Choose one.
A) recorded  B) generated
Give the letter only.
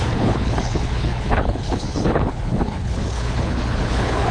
B